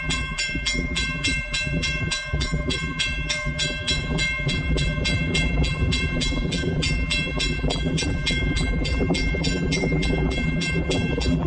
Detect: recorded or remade remade